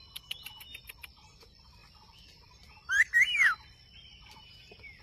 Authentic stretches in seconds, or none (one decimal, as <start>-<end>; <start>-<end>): 0.0-1.8